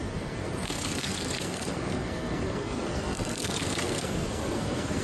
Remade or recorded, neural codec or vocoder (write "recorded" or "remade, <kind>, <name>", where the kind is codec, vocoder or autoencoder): remade, codec, SNAC